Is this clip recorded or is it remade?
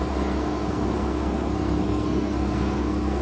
remade